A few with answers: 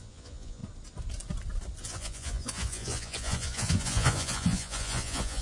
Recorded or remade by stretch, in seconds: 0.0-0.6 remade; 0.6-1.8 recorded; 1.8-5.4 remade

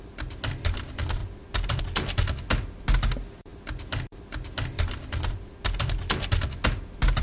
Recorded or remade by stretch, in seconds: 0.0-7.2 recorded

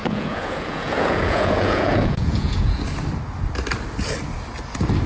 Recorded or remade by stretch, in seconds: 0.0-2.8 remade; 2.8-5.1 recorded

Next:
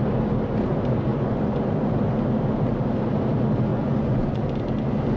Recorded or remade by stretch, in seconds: 0.0-1.1 recorded; 1.1-1.6 remade; 1.6-3.7 recorded; 3.7-4.4 remade; 4.4-5.2 recorded

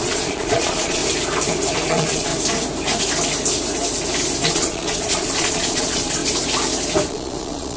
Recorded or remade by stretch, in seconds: 0.0-1.0 remade; 1.0-1.9 recorded; 1.9-2.3 remade; 2.3-4.5 recorded; 4.5-6.2 remade; 6.2-7.1 recorded; 7.1-7.8 remade